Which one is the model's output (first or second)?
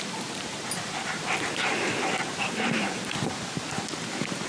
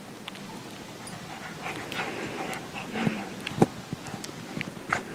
first